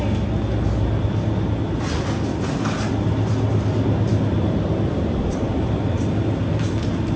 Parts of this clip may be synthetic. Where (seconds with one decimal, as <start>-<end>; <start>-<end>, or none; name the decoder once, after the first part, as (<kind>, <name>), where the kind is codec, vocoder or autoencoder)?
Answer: none